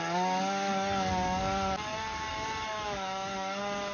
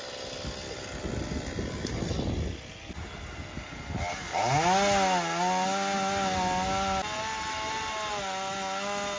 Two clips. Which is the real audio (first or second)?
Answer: second